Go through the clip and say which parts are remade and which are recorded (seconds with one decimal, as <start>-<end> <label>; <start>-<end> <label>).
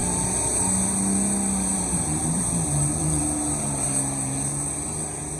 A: 0.0-1.7 recorded; 1.7-3.2 remade; 3.2-5.4 recorded